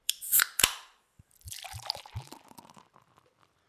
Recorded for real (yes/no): no